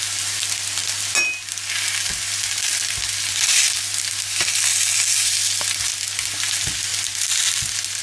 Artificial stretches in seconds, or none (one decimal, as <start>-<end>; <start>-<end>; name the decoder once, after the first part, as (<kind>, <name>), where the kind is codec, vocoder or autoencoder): none